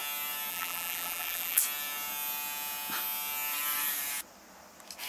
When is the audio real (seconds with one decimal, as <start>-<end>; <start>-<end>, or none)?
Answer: 0.0-0.5; 1.6-5.1